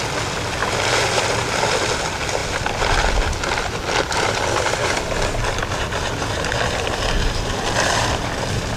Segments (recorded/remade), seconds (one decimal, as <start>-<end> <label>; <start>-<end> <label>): 0.0-2.4 recorded; 2.4-3.1 remade; 3.1-8.8 recorded